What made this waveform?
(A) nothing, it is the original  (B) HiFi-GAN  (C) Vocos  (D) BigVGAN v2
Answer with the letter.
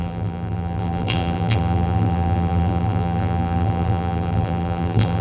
D